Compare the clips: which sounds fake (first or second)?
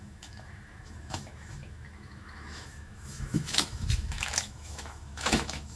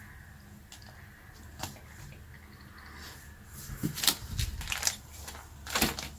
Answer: first